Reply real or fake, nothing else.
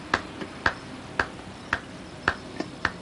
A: real